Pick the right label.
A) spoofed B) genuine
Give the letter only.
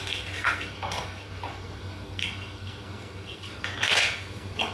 A